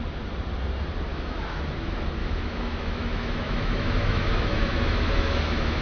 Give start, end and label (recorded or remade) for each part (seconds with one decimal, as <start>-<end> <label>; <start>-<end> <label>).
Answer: 0.0-1.1 recorded; 1.1-1.6 remade; 1.6-2.2 recorded; 2.2-5.8 remade